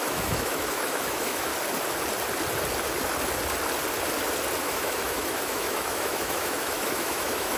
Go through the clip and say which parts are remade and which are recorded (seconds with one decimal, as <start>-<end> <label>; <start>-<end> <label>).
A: 0.0-1.5 remade; 1.5-4.6 recorded; 4.6-7.6 remade

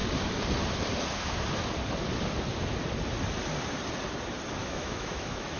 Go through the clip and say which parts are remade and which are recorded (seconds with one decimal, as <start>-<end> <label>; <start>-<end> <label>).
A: 0.0-4.6 recorded; 4.6-5.6 remade

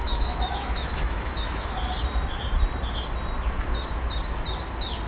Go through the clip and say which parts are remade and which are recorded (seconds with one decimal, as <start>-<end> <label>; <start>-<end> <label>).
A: 0.0-1.7 remade; 1.7-5.1 recorded

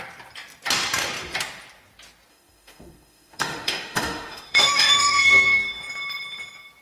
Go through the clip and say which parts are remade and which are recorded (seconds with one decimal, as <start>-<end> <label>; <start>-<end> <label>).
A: 0.0-2.3 recorded; 2.3-5.8 remade; 5.8-6.8 recorded